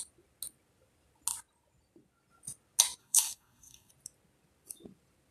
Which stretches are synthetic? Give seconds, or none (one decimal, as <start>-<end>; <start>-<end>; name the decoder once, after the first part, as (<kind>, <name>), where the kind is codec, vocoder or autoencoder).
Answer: 3.0-3.9 (codec, DAC)